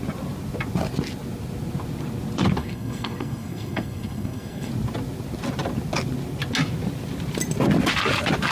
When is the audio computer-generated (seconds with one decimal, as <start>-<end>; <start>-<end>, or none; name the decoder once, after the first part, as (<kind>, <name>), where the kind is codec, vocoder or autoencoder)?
2.6-4.7 (codec, SNAC)